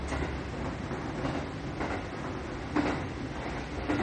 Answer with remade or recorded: recorded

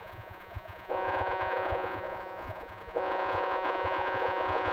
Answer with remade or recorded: remade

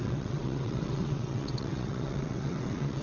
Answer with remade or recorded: remade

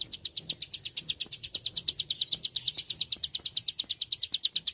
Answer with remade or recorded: recorded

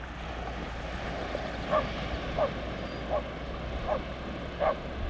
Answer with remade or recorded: recorded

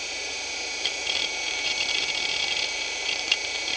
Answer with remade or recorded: remade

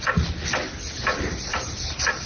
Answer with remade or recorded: recorded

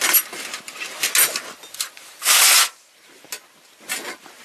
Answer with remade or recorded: recorded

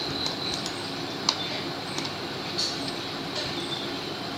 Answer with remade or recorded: recorded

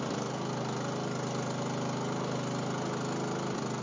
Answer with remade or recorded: recorded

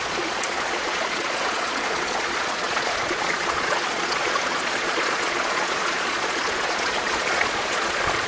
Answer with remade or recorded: remade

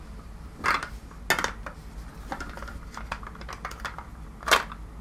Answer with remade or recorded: recorded